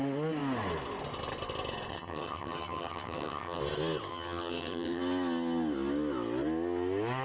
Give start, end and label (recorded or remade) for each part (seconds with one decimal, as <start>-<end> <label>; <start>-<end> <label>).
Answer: 0.0-1.9 recorded; 1.9-3.6 remade; 3.6-4.1 recorded; 4.1-5.0 remade; 5.0-7.2 recorded